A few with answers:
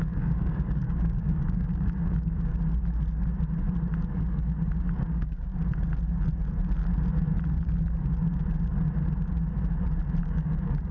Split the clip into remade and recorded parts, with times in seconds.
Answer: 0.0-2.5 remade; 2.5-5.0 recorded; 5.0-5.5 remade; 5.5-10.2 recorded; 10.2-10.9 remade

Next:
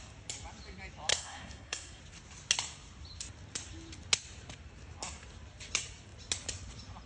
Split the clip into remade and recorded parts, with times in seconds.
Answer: 0.0-1.1 recorded; 1.1-2.0 remade; 2.0-7.1 recorded

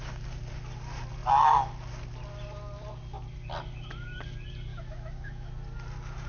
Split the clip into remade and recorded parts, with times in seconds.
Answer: 0.0-4.7 recorded; 4.7-5.5 remade; 5.5-6.3 recorded

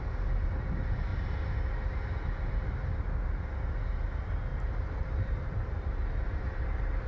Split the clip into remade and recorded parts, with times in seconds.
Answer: 0.0-4.5 recorded; 4.5-7.1 remade

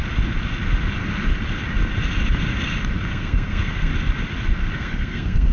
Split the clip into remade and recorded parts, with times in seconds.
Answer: 0.0-3.0 recorded; 3.0-3.9 remade; 3.9-4.8 recorded; 4.8-5.5 remade

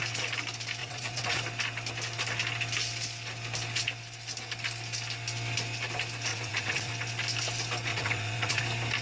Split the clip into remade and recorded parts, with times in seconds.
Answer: 0.0-0.8 recorded; 0.8-1.4 remade; 1.4-6.3 recorded; 6.3-6.9 remade; 6.9-7.9 recorded; 7.9-8.6 remade; 8.6-9.0 recorded

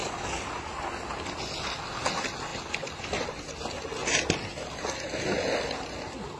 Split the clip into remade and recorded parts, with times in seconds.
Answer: 0.0-6.4 recorded